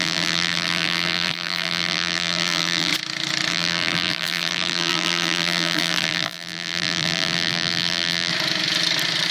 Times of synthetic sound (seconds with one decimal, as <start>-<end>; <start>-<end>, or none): 0.0-2.9; 3.5-8.3